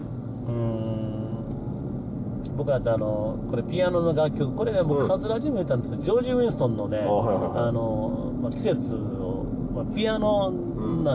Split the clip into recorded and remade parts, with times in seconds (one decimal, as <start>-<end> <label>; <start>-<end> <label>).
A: 0.0-11.1 recorded